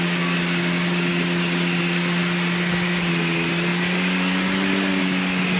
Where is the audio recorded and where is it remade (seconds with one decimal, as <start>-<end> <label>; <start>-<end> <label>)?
0.0-5.6 recorded